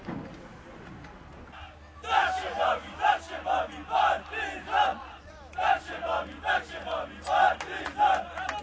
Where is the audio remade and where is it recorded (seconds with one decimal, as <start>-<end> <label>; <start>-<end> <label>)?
0.0-4.9 recorded; 4.9-5.4 remade; 5.4-8.6 recorded